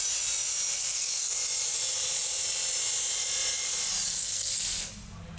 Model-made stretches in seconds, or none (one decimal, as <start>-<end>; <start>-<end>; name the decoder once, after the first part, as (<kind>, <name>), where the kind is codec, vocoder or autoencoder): 0.7-1.3 (codec, SNAC); 4.1-4.9